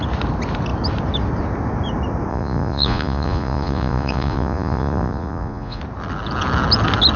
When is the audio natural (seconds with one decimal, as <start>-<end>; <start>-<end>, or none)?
0.0-2.3; 5.8-7.2

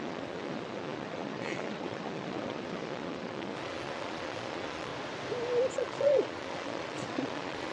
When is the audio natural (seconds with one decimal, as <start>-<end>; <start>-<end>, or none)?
4.9-5.7

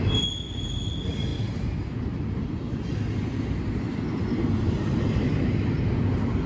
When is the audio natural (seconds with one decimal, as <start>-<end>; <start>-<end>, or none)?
0.0-6.5